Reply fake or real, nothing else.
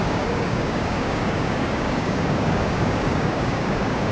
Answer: fake